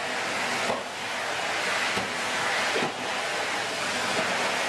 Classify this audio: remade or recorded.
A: recorded